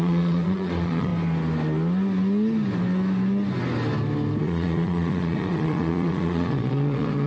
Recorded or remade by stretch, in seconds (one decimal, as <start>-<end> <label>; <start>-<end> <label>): 0.0-1.1 remade; 1.1-4.4 recorded; 4.4-7.3 remade

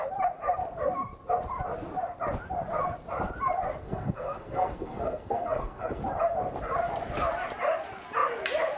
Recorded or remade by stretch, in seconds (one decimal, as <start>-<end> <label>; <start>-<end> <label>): 0.0-3.8 recorded; 3.8-6.0 remade; 6.0-8.8 recorded

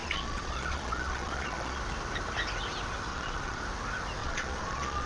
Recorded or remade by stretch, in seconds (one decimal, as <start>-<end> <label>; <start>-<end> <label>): 0.0-1.8 remade; 1.8-3.1 recorded; 3.1-3.6 remade; 3.6-4.2 recorded; 4.2-5.1 remade

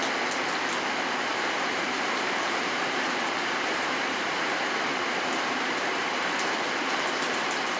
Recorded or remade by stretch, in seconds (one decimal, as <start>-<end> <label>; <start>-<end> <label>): 0.0-1.3 recorded; 1.3-6.0 remade; 6.0-7.8 recorded

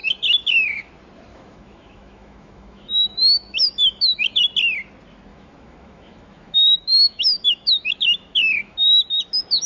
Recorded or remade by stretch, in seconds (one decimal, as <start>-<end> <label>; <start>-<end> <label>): 0.0-0.9 remade; 0.9-1.3 recorded; 1.3-4.4 remade; 4.4-5.3 recorded; 5.3-9.2 remade; 9.2-9.7 recorded

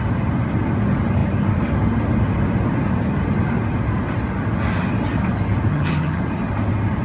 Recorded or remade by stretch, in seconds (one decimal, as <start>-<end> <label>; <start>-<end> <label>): 0.0-5.7 recorded; 5.7-6.2 remade; 6.2-7.0 recorded

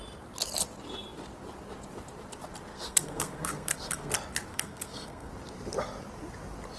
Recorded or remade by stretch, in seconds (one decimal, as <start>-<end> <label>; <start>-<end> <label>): 0.0-2.7 recorded; 2.7-4.1 remade; 4.1-4.5 recorded; 4.5-5.3 remade; 5.3-6.8 recorded